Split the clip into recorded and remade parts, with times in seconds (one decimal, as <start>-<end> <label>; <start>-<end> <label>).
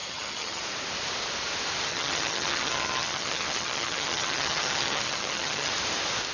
0.0-0.6 remade; 0.6-1.9 recorded; 1.9-5.7 remade; 5.7-6.3 recorded